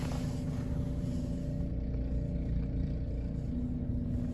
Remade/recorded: recorded